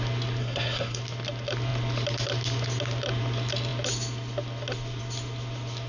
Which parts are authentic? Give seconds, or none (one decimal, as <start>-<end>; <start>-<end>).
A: 0.0-0.4; 1.0-5.9